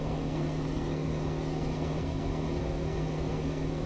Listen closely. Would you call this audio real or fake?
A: fake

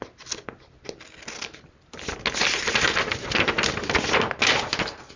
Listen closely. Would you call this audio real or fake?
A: real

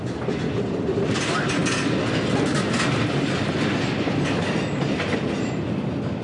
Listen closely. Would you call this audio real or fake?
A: real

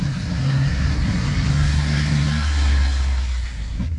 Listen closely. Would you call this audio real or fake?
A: fake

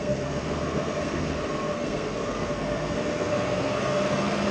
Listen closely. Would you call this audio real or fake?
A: fake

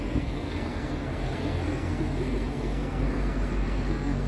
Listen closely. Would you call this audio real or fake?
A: fake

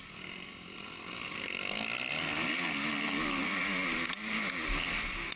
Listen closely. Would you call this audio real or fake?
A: real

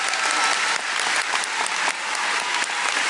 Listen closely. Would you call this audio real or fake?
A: real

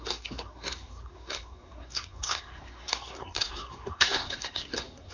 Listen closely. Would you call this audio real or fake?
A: fake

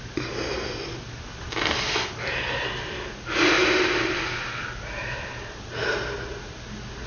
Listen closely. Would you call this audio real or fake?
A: real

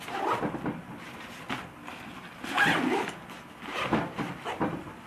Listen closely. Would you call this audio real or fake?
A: real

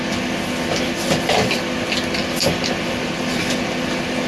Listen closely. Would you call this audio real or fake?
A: real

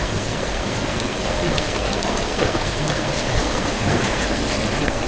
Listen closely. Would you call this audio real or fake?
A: fake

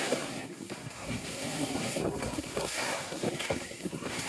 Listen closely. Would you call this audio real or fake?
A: fake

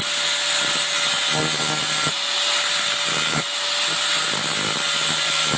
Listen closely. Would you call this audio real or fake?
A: real